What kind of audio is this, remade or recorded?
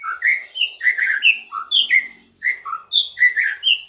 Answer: recorded